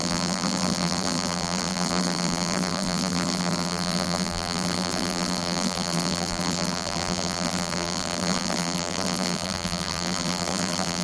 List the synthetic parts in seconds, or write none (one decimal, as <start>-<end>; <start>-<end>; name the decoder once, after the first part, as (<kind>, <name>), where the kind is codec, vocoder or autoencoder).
0.0-11.0 (vocoder, BigVGAN v2)